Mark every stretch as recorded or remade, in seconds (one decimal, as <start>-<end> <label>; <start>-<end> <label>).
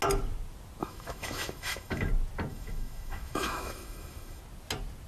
0.0-0.8 recorded; 0.8-2.1 remade; 2.1-2.5 recorded; 2.5-4.4 remade; 4.4-5.1 recorded